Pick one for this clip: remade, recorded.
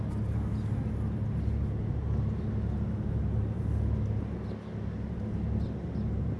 recorded